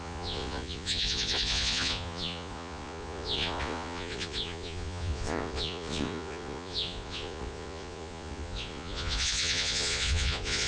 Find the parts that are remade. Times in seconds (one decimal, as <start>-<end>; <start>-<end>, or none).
0.0-10.7